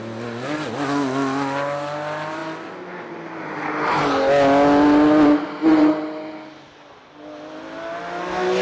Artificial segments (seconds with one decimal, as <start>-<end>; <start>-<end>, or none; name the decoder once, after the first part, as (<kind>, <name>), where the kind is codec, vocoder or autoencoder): none